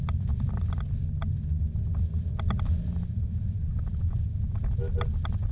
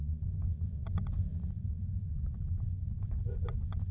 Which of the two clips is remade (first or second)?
second